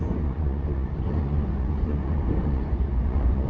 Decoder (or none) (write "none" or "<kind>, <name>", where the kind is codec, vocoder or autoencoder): vocoder, Vocos